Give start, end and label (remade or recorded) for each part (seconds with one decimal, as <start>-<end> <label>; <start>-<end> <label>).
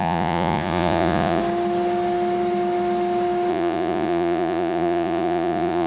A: 0.0-1.4 remade; 1.4-3.5 recorded; 3.5-5.9 remade